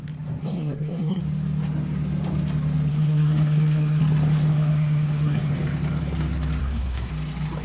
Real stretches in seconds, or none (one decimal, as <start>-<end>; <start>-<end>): 0.0-0.4; 1.2-2.9; 4.0-4.5; 5.5-6.6; 7.1-7.6